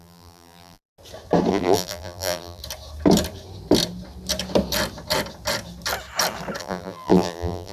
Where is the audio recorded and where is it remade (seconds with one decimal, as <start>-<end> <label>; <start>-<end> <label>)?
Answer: 0.0-0.9 remade; 0.9-1.5 recorded; 1.5-2.6 remade; 2.6-6.6 recorded; 6.6-7.7 remade